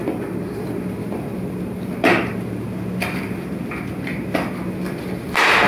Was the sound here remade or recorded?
recorded